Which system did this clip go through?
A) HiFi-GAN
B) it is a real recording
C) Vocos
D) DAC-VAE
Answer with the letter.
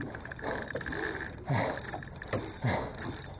B